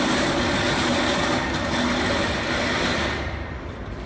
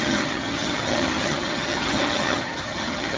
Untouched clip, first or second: first